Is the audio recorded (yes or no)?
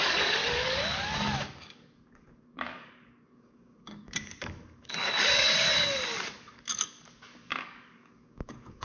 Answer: no